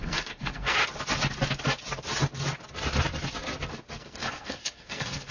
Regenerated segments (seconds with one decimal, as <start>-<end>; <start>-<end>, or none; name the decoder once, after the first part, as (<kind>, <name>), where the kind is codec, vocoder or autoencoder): 0.0-0.8 (codec, SNAC); 4.0-5.3

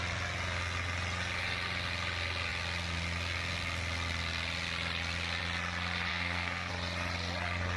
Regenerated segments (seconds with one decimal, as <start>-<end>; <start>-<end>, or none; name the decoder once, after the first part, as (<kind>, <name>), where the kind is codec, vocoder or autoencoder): 6.1-6.7 (codec, SNAC)

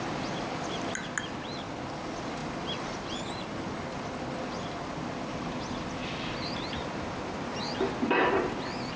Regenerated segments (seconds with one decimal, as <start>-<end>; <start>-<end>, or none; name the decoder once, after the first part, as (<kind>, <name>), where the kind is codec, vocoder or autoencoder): none

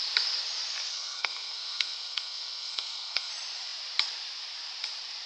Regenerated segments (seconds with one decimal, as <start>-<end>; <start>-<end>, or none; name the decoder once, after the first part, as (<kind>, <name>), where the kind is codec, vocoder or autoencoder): 0.9-3.3 (codec, SNAC)